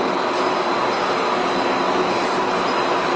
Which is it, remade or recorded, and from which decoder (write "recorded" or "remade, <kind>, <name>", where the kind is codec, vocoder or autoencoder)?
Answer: recorded